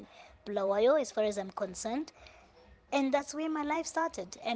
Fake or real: fake